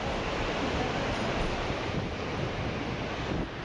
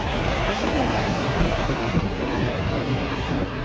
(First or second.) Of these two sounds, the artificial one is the second